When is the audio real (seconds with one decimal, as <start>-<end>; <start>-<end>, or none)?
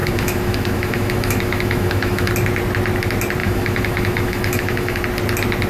2.3-3.4; 5.0-5.7